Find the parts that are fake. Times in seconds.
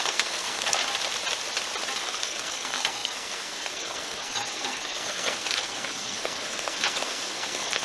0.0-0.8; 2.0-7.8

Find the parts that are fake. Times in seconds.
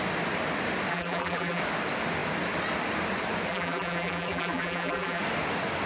0.9-1.6; 3.5-5.2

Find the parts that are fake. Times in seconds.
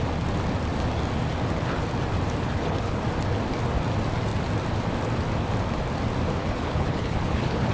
2.5-3.0; 6.4-7.7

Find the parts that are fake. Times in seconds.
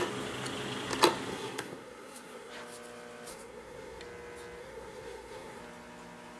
1.3-2.5; 3.3-4.0; 4.6-5.6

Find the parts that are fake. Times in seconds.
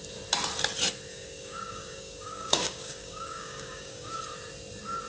1.1-4.2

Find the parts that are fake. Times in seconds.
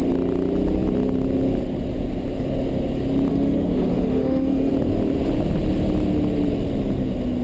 3.3-4.7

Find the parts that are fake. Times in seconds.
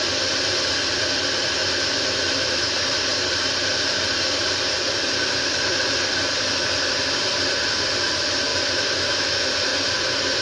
0.0-9.7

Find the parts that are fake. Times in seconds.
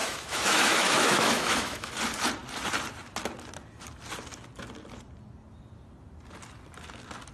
0.0-1.9